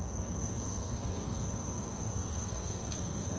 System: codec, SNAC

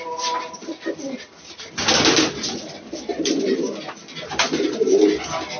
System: none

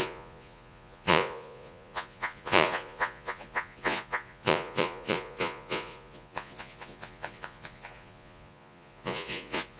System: vocoder, Vocos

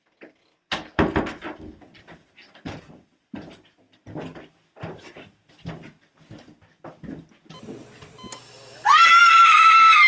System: none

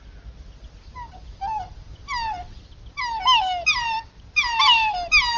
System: none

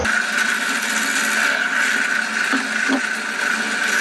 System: none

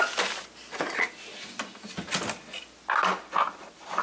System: none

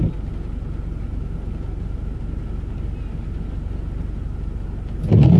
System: none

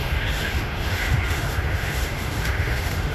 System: autoencoder, DAC-VAE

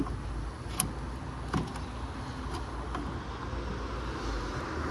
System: none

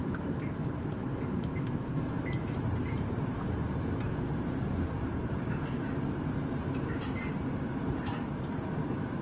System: vocoder, BigVGAN v2